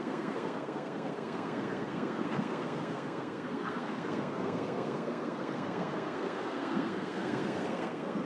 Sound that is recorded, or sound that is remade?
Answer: remade